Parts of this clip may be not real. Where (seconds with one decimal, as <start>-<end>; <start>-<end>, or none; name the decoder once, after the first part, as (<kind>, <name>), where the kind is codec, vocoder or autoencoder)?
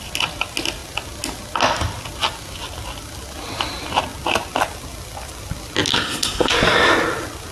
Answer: 5.9-6.5 (codec, SNAC)